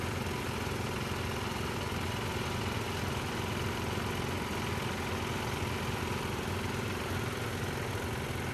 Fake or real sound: real